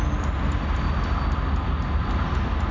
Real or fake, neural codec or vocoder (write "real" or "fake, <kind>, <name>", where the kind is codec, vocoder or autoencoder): real